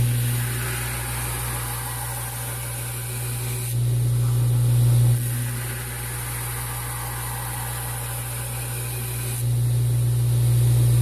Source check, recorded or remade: recorded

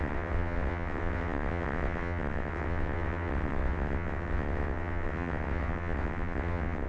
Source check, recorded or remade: remade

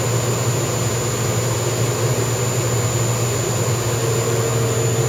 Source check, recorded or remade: recorded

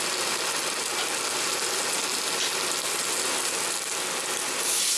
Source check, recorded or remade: recorded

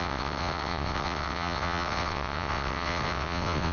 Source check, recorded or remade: remade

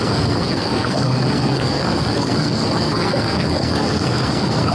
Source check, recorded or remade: remade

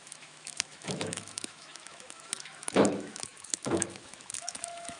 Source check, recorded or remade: remade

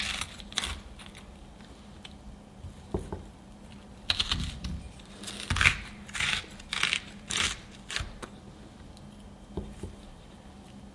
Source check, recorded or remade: recorded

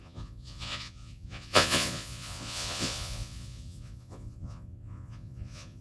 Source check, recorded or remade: remade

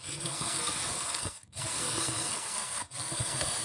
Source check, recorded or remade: remade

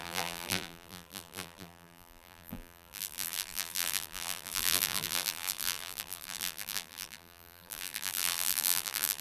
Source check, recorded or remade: remade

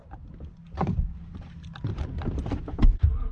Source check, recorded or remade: recorded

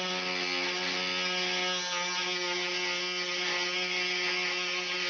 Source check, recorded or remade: recorded